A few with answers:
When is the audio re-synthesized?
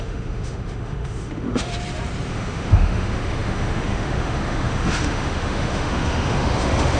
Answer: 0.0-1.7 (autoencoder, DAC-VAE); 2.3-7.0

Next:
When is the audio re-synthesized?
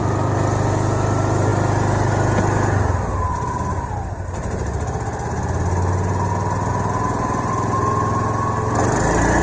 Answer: none